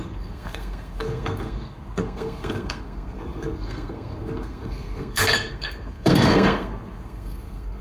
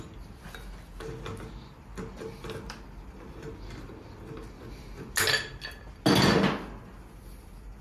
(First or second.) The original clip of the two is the second